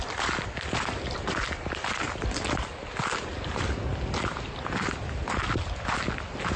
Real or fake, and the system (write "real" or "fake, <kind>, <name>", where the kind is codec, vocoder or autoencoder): real